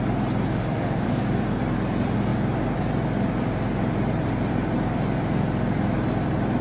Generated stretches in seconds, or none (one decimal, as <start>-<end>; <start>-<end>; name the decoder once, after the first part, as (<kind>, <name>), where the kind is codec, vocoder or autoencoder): 0.5-1.2 (autoencoder, DAC-VAE)